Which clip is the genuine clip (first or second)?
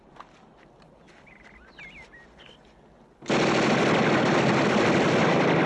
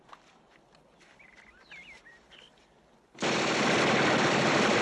first